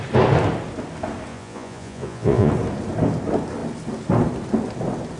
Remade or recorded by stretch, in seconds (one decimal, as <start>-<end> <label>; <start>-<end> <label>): 0.0-1.3 recorded; 1.3-2.5 remade; 2.5-5.2 recorded